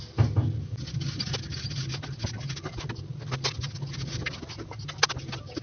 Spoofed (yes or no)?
no